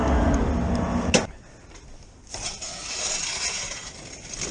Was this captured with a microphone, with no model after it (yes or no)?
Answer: yes